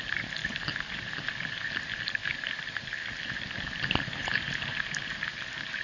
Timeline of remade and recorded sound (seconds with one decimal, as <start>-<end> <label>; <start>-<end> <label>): 0.0-5.8 recorded